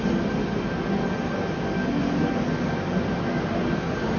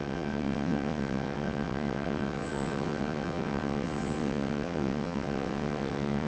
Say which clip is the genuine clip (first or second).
first